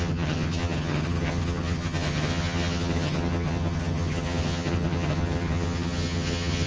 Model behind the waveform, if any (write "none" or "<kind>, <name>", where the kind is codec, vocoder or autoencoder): vocoder, HiFi-GAN